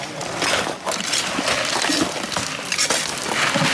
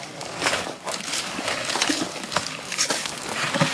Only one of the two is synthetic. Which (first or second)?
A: second